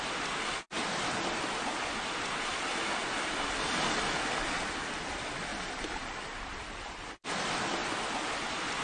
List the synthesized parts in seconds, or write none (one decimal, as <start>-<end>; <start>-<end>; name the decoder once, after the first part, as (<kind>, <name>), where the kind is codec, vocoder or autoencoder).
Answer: 5.5-7.1 (vocoder, BigVGAN v2)